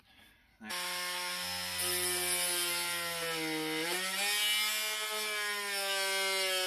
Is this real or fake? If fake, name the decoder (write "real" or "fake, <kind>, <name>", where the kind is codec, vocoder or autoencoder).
real